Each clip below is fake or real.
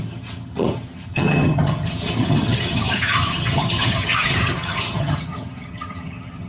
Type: fake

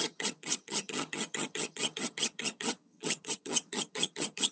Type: fake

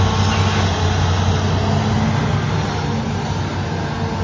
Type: real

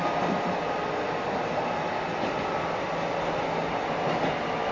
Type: real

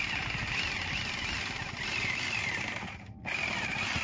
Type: real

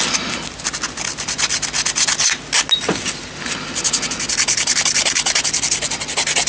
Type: real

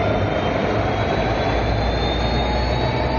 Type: real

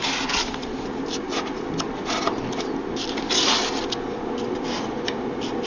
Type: real